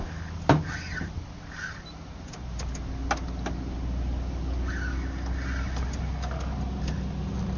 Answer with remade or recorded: recorded